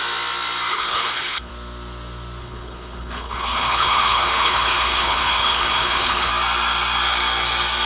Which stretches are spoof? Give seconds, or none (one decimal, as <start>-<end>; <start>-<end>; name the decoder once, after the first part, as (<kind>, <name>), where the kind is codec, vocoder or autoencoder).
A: 0.7-1.5 (codec, HILCodec); 2.4-6.3